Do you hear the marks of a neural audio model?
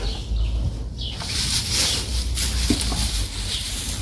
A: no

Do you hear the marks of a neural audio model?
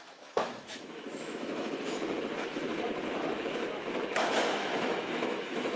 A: yes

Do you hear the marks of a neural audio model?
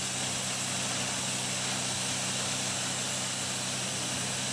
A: no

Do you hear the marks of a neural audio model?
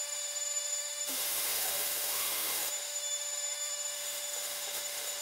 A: yes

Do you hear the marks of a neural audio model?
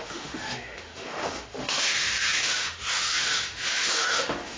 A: yes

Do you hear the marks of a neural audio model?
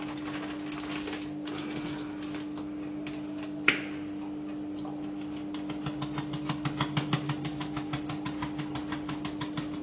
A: no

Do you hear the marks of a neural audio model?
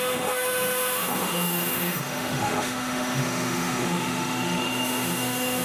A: yes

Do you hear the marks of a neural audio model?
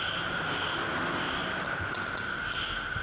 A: no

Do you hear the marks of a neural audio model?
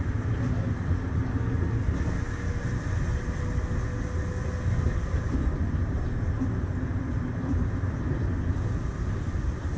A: no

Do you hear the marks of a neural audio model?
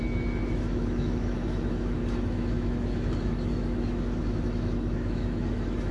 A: yes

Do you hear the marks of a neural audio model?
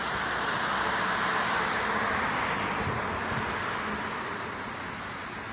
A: no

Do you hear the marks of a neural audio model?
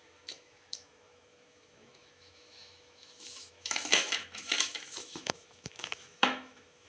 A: yes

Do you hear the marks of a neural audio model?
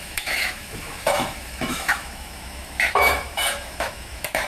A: yes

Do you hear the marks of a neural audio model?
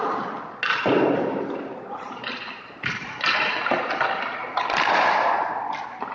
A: no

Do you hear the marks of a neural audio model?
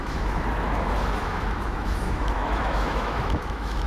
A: yes